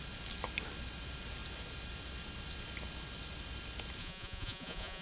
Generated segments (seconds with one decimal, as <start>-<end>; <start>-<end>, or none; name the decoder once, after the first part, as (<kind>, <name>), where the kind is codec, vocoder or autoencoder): 4.0-5.0 (vocoder, Vocos)

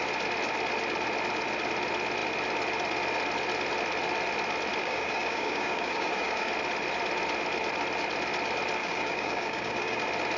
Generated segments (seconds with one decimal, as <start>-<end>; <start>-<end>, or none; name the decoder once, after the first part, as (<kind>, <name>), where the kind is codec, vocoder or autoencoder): 4.8-6.5 (codec, DAC); 8.8-10.0

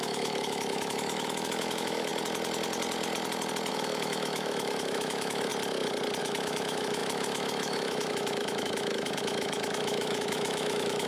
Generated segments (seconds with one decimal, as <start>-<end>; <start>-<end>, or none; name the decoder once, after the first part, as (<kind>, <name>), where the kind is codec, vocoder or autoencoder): 0.0-2.1 (autoencoder, DAC-VAE); 3.7-5.5; 6.2-11.1

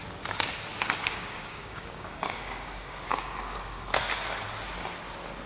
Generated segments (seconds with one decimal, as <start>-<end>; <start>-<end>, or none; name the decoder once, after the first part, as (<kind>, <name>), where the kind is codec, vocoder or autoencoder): 0.7-4.0 (codec, DAC)

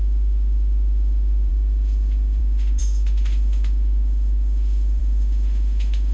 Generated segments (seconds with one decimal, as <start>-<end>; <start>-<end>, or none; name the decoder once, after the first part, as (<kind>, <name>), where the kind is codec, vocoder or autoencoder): 0.0-6.1 (autoencoder, DAC-VAE)